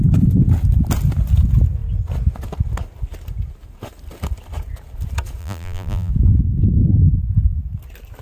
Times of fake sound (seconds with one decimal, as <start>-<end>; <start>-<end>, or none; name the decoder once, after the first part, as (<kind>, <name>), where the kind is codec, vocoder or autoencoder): 5.4-6.1 (vocoder, BigVGAN v2)

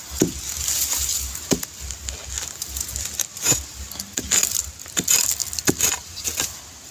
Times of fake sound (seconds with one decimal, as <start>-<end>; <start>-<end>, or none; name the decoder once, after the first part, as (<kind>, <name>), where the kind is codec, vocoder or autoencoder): none

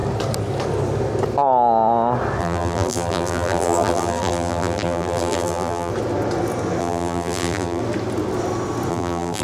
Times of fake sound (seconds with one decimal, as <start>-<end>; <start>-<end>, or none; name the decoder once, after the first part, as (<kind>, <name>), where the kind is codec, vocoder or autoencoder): 2.4-5.9 (vocoder, BigVGAN v2); 6.8-7.8; 8.9-9.4

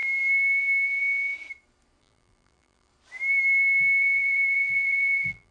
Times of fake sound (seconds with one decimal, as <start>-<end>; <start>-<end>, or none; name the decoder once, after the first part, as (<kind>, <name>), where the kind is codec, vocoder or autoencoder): 2.0-2.9 (vocoder, BigVGAN v2); 4.0-5.5

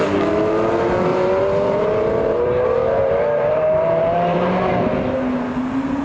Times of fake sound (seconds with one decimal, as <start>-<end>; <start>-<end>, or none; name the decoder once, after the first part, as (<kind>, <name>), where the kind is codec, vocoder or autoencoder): 1.1-4.7 (vocoder, BigVGAN v2)

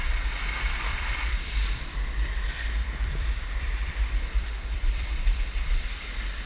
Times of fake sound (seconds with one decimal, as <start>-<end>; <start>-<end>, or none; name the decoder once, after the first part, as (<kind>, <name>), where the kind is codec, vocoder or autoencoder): 0.9-1.7 (vocoder, BigVGAN v2); 2.8-6.1